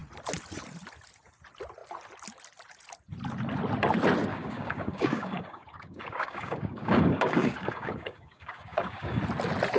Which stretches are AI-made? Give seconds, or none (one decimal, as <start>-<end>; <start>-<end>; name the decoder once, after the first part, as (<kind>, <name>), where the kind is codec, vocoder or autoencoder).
4.3-9.2 (codec, DAC)